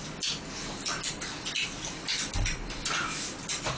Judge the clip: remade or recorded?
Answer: recorded